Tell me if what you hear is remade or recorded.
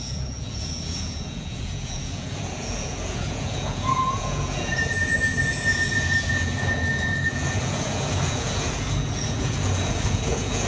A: remade